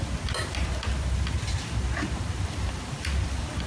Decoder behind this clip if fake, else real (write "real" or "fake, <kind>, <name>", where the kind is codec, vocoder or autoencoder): real